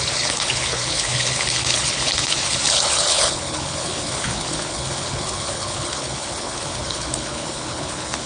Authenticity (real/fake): fake